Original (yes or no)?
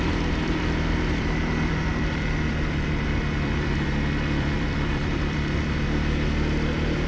no